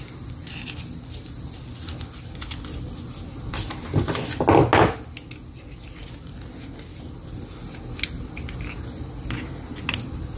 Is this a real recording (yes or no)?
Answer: yes